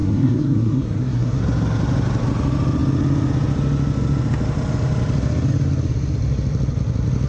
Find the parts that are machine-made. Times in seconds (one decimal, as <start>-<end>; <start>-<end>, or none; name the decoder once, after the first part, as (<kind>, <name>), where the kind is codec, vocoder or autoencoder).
0.0-1.4 (codec, SNAC)